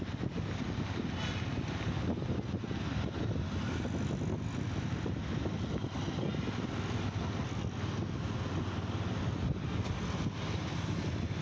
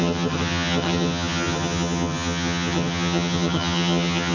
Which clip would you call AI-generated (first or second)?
second